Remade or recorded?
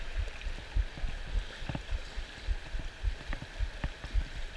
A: recorded